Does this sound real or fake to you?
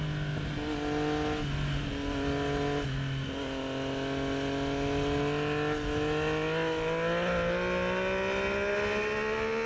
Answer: real